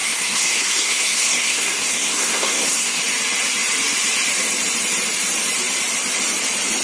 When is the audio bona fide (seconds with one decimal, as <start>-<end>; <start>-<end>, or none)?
3.0-6.8